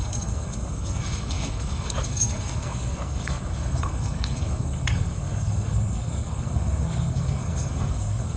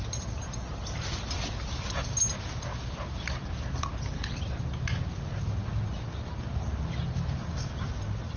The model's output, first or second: first